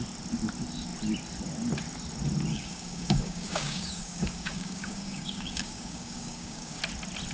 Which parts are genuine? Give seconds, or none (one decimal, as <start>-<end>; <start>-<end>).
0.0-2.5; 6.8-7.3